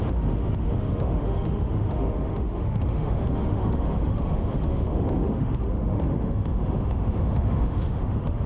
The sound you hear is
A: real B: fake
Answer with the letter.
B